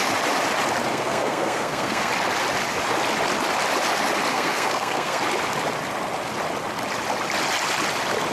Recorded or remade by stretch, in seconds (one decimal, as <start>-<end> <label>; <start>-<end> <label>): 0.0-0.9 recorded; 0.9-2.1 remade; 2.1-4.3 recorded; 4.3-5.2 remade; 5.2-8.3 recorded